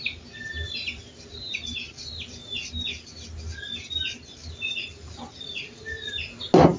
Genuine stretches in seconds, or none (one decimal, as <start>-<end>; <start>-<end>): 0.0-6.8

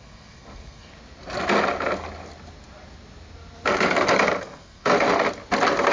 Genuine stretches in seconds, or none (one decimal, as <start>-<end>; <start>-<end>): 0.9-4.4; 4.9-5.9

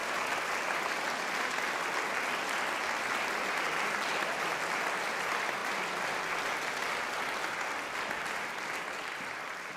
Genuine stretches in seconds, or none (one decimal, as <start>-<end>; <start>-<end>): 0.0-9.8

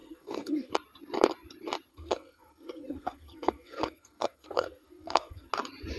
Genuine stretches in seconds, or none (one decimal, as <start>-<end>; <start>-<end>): 0.7-1.9; 5.5-6.0